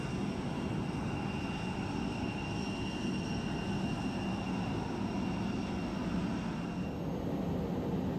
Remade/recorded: recorded